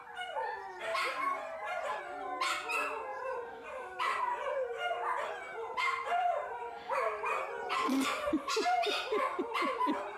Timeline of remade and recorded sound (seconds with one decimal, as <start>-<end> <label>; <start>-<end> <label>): 0.0-0.9 recorded; 0.9-2.0 remade; 2.0-3.1 recorded; 3.1-4.2 remade; 4.2-5.6 recorded; 5.6-7.3 remade; 7.3-10.2 recorded